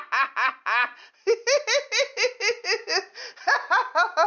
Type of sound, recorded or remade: recorded